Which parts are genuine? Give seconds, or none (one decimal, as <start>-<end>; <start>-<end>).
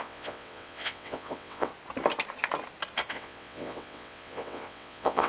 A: 1.7-3.1